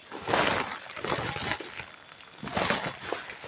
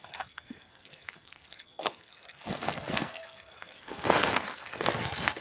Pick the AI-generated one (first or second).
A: second